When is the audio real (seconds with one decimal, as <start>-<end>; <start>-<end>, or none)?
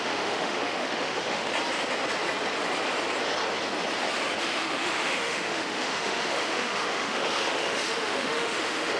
1.5-4.4